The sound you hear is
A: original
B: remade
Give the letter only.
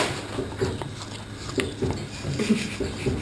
A